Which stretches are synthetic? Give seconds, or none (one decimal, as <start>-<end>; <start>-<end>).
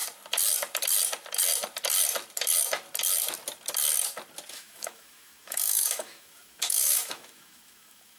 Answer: 4.5-8.2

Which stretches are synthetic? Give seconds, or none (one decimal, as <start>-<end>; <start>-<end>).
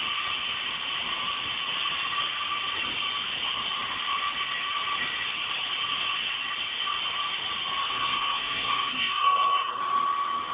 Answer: 7.9-9.8